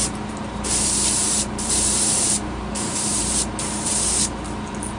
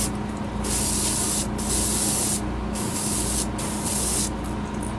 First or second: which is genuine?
second